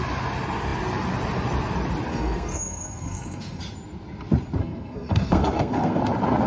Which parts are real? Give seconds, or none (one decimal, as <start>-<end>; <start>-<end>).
0.0-2.1; 3.6-4.6; 6.0-6.5